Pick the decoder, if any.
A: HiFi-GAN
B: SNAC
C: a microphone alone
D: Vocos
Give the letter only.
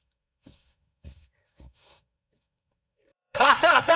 B